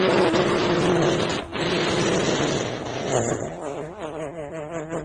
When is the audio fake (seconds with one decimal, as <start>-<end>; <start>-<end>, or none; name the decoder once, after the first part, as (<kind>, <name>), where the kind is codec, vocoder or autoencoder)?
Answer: none